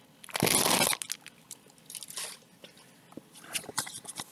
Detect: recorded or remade recorded